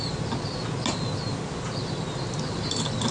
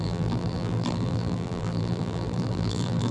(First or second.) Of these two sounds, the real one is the first